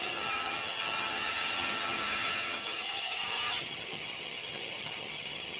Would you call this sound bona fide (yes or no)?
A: no